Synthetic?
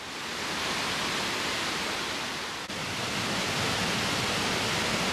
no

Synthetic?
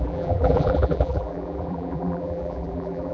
yes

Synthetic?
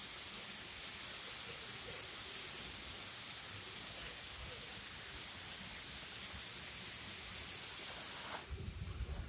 no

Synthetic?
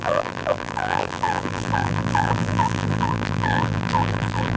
yes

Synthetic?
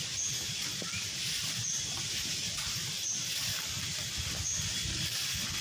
no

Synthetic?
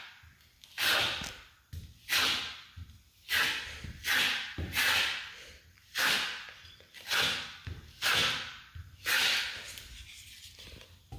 yes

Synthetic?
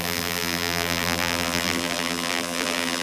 yes